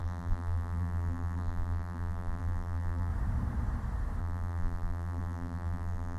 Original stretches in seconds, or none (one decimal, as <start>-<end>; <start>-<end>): 3.1-4.2